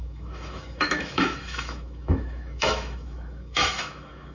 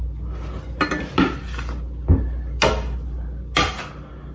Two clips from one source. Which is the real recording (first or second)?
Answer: second